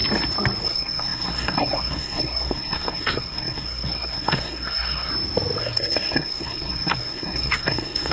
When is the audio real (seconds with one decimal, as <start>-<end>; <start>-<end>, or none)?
0.0-0.6; 5.1-5.6